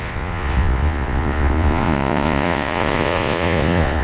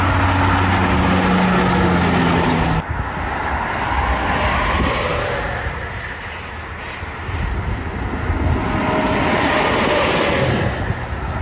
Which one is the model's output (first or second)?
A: first